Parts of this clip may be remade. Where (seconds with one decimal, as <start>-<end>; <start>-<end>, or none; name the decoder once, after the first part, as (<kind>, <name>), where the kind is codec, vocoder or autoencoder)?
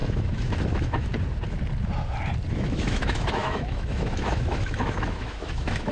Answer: 0.0-1.1 (autoencoder, DAC-VAE); 2.5-5.9